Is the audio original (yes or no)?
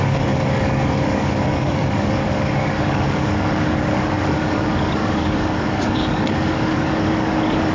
no